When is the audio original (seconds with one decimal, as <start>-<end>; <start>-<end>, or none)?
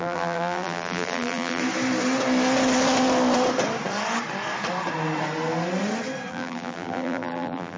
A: 1.6-6.3